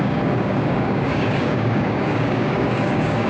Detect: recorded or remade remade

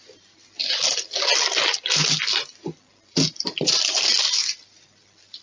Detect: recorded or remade recorded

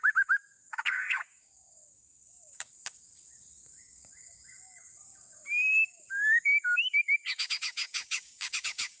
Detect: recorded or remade remade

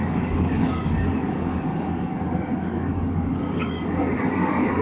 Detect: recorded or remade remade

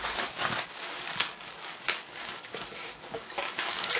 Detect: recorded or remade remade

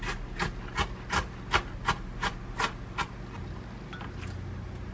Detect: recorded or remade recorded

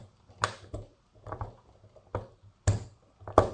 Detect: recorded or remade recorded